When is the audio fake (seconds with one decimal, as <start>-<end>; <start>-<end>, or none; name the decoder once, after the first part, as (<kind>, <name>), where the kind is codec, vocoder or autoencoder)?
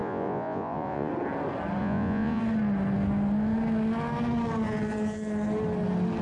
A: 0.0-1.1 (vocoder, Vocos); 1.8-2.4